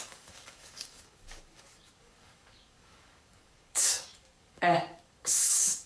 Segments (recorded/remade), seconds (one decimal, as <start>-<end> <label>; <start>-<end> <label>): 0.0-5.9 remade